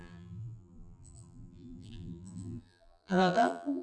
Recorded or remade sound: remade